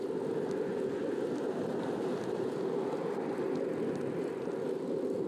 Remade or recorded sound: recorded